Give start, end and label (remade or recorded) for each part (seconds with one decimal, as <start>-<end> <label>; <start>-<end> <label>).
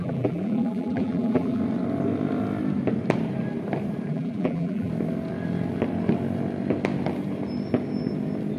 0.0-1.6 remade; 1.6-4.1 recorded; 4.1-4.9 remade; 4.9-8.6 recorded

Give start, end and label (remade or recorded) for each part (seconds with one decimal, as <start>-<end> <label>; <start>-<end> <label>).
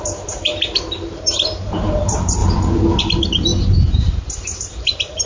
0.0-0.5 remade; 0.5-1.2 recorded; 1.2-2.4 remade; 2.4-3.0 recorded; 3.0-5.3 remade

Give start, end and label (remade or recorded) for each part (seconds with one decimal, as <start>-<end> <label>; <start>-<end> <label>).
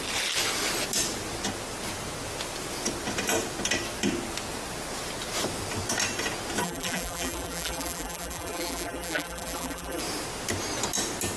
0.0-6.6 recorded; 6.6-10.0 remade; 10.0-11.4 recorded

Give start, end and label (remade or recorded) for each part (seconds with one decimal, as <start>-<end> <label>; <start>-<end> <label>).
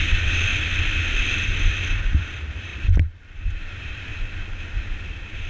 0.0-0.5 remade; 0.5-2.2 recorded; 2.2-2.7 remade; 2.7-3.6 recorded; 3.6-4.1 remade; 4.1-5.1 recorded; 5.1-5.5 remade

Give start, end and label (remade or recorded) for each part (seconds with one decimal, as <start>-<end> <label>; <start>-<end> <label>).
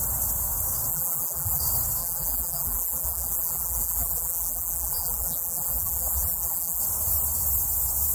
0.0-0.9 recorded; 0.9-1.6 remade; 1.6-2.0 recorded; 2.0-6.8 remade; 6.8-8.1 recorded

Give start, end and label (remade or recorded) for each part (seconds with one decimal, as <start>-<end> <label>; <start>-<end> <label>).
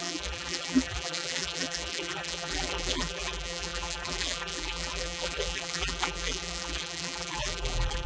0.0-8.1 remade